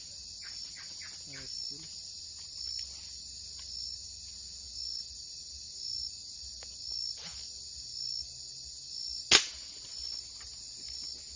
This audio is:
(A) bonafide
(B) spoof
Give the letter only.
A